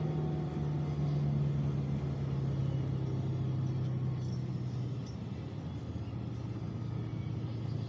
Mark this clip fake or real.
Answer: real